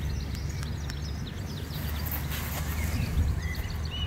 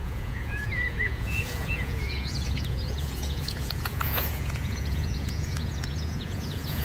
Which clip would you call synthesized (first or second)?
second